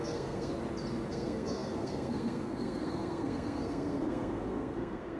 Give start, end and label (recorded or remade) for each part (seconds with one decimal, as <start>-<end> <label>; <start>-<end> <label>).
0.0-0.5 remade; 0.5-1.1 recorded; 1.1-5.2 remade